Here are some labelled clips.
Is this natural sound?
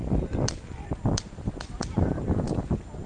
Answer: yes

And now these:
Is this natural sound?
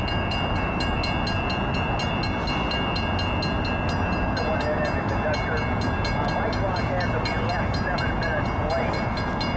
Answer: yes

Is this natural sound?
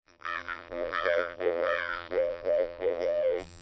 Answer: no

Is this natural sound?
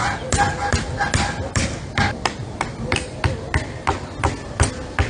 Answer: yes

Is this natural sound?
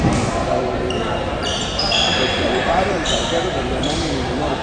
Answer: no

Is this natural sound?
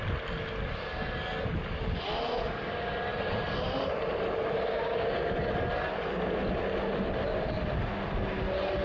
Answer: yes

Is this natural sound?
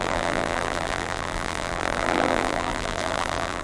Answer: no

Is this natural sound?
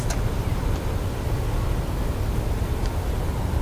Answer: no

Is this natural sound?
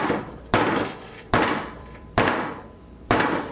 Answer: no